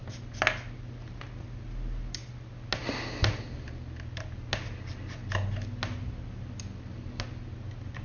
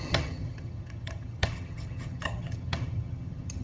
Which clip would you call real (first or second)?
first